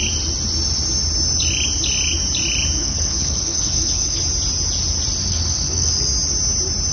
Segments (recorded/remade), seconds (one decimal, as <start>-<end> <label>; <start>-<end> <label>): 0.0-2.8 recorded; 2.8-4.2 remade; 4.2-5.3 recorded; 5.3-5.9 remade; 5.9-6.9 recorded